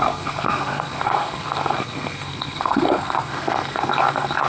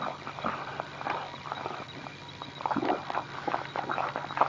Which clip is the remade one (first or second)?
first